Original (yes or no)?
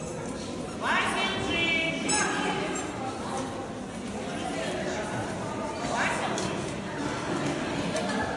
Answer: yes